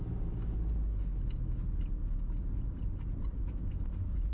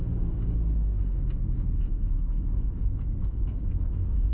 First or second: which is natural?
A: first